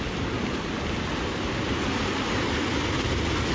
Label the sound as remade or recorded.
recorded